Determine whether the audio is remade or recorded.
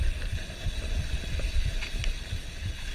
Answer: recorded